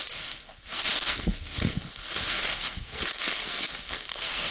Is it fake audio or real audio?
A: fake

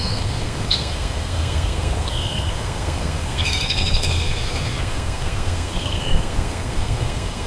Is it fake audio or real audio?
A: fake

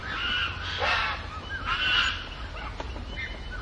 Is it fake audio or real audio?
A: real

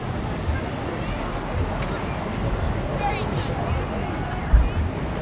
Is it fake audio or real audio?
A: real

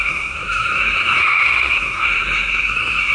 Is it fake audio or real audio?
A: fake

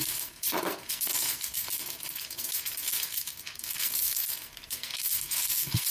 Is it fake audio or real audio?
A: fake